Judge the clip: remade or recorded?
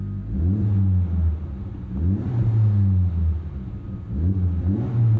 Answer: recorded